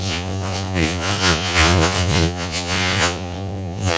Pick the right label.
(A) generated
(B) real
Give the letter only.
A